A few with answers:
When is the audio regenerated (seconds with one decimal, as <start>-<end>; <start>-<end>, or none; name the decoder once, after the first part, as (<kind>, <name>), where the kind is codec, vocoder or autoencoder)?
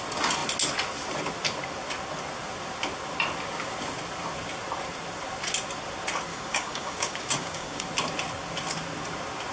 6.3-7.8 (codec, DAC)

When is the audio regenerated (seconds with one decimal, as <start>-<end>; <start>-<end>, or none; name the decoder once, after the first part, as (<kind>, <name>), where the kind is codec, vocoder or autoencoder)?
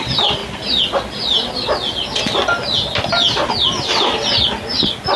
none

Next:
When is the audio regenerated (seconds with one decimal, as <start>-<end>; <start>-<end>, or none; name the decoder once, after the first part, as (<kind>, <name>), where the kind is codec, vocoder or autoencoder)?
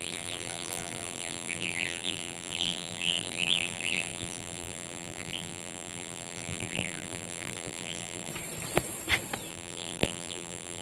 0.0-8.3 (vocoder, BigVGAN v2); 9.5-10.8